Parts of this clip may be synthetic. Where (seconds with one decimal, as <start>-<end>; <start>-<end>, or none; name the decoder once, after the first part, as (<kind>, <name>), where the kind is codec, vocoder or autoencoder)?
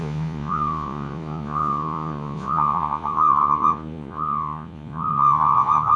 0.0-6.0 (vocoder, Vocos)